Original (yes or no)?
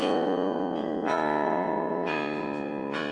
no